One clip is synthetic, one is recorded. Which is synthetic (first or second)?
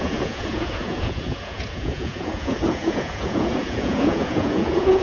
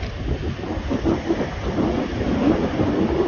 first